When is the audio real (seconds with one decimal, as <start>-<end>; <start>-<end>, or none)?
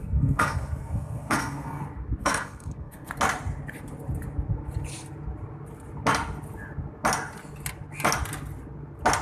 1.8-2.2; 3.1-9.2